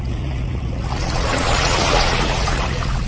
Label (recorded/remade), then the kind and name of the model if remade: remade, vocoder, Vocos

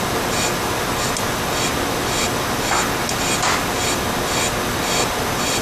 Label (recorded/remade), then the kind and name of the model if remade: recorded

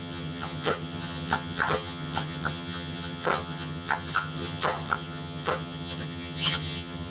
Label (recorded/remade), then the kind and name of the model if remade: remade, vocoder, HiFi-GAN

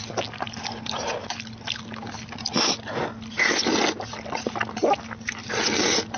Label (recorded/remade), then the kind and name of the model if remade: recorded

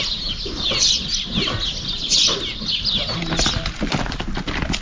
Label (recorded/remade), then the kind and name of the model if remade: recorded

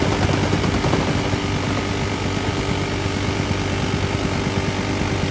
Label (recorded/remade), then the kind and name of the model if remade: recorded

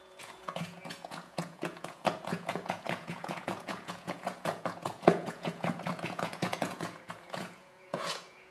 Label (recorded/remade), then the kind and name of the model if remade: remade, vocoder, Vocos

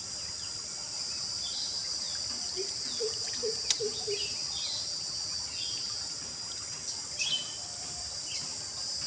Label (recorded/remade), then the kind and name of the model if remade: recorded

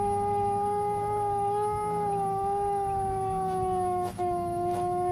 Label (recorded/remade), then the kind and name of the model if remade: remade, autoencoder, DAC-VAE